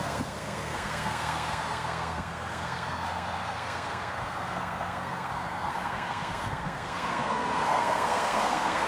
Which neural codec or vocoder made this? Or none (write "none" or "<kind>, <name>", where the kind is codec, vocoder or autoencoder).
codec, SNAC